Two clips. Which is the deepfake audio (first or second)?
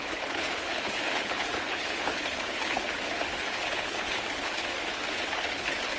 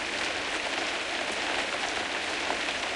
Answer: first